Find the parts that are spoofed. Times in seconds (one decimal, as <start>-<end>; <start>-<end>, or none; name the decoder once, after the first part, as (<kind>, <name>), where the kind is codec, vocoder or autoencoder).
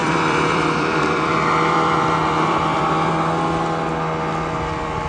0.0-3.1 (vocoder, BigVGAN v2)